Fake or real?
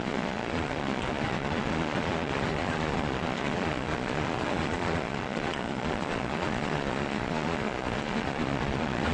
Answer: fake